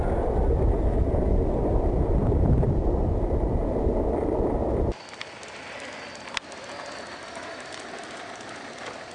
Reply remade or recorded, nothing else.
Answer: recorded